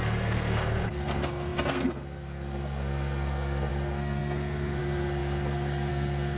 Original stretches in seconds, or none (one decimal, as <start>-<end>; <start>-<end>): none